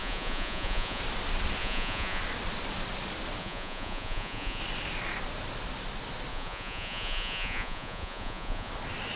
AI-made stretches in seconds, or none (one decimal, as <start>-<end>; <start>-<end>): 0.0-1.0; 1.6-2.2; 3.4-4.6; 6.3-8.7